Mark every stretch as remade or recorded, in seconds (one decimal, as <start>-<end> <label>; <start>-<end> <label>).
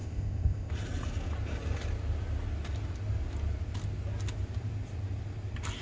0.0-0.7 remade; 0.7-5.8 recorded